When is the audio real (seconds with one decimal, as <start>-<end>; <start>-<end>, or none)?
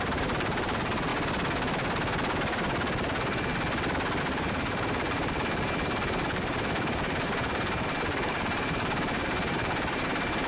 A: 1.1-4.2